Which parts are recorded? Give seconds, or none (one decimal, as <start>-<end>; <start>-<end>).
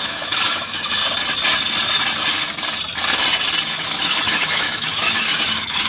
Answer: 1.0-3.6